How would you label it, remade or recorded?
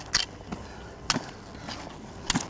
recorded